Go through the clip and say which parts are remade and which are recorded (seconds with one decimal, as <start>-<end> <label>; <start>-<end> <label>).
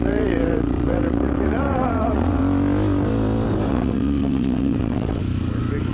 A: 0.0-2.4 remade; 2.4-3.7 recorded; 3.7-5.2 remade; 5.2-5.9 recorded